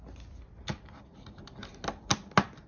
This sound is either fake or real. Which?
real